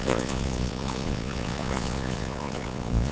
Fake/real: fake